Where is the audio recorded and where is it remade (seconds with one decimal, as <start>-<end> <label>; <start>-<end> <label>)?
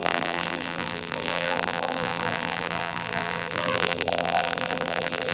0.0-5.3 remade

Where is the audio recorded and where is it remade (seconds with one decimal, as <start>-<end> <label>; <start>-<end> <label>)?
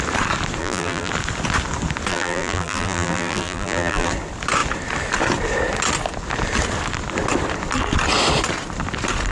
0.0-0.6 recorded; 0.6-1.1 remade; 1.1-2.1 recorded; 2.1-4.1 remade; 4.1-9.3 recorded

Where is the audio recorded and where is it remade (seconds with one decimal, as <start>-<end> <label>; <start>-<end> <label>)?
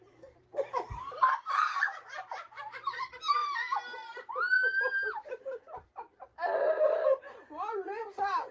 0.0-3.4 remade; 3.4-4.1 recorded; 4.1-8.5 remade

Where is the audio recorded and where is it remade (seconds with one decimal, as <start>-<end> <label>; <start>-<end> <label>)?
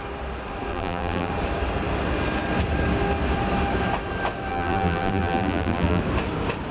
0.0-0.7 recorded; 0.7-1.3 remade; 1.3-4.5 recorded; 4.5-6.0 remade; 6.0-6.7 recorded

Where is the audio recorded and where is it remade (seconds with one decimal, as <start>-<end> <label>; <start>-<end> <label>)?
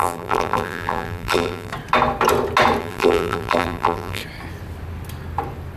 0.0-1.7 remade; 1.7-2.8 recorded; 2.8-4.2 remade; 4.2-5.8 recorded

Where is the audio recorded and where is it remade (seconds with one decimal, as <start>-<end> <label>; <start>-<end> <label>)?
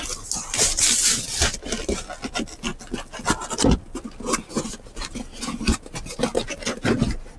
0.0-2.7 remade; 2.7-7.4 recorded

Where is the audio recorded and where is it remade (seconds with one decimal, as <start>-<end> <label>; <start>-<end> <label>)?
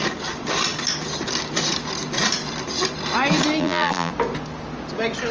0.0-3.6 recorded; 3.6-4.1 remade; 4.1-5.3 recorded